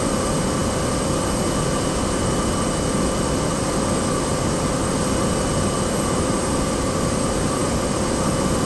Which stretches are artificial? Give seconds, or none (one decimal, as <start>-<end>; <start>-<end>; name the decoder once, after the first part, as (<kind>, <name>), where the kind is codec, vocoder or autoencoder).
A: none